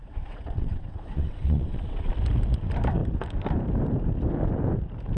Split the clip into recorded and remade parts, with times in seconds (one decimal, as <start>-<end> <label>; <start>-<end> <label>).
0.0-2.1 remade; 2.1-5.2 recorded

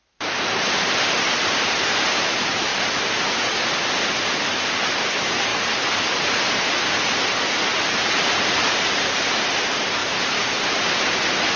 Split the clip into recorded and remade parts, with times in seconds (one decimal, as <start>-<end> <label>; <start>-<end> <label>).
0.0-2.7 remade; 2.7-4.9 recorded; 4.9-5.5 remade; 5.5-7.7 recorded; 7.7-11.6 remade

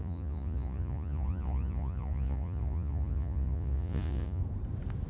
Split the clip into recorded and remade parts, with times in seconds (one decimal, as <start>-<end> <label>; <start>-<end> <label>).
0.0-4.4 remade; 4.4-5.1 recorded

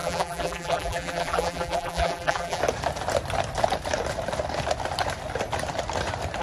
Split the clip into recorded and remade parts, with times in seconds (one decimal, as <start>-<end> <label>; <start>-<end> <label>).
0.0-2.6 remade; 2.6-6.4 recorded

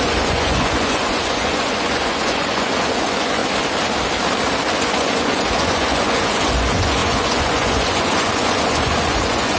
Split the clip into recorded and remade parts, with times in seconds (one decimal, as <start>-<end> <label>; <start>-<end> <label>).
0.0-3.4 remade; 3.4-4.8 recorded; 4.8-9.6 remade